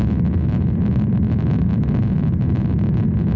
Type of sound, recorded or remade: recorded